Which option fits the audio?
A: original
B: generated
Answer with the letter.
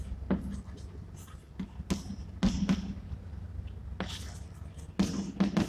A